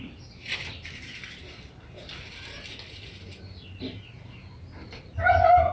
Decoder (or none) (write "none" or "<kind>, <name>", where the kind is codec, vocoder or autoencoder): none